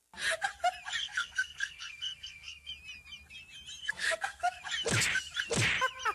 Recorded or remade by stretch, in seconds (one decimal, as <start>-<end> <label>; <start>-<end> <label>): 0.0-1.0 recorded; 1.0-2.7 remade; 2.7-3.8 recorded; 3.8-4.6 remade; 4.6-6.1 recorded